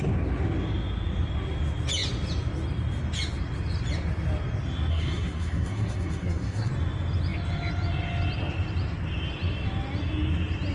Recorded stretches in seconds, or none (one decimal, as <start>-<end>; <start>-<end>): 0.0-4.9; 6.7-10.7